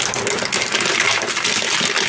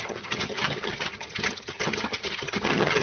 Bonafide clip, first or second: first